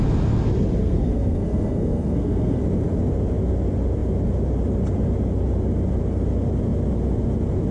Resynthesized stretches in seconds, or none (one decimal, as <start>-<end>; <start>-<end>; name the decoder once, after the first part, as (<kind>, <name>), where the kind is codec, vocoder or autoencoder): 0.8-2.6 (codec, SNAC)

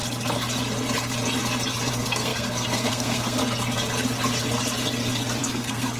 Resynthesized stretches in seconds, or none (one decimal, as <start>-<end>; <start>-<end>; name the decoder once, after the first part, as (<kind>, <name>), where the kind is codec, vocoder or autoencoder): 1.9-3.4 (codec, SNAC); 5.4-6.0

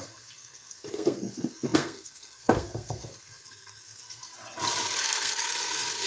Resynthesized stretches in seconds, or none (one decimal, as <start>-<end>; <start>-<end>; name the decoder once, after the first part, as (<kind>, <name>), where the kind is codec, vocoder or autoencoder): 0.0-4.3 (codec, SNAC); 5.0-6.1

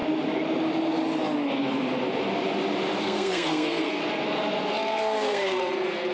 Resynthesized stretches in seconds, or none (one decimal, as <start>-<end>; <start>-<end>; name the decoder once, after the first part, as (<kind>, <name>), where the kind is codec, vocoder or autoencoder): 3.0-4.0 (codec, SNAC); 4.7-6.1